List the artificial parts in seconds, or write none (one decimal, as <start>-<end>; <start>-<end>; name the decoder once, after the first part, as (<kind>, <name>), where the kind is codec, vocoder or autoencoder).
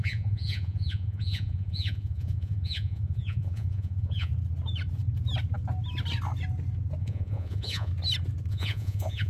0.0-4.3 (vocoder, Vocos); 7.0-7.9; 8.5-9.3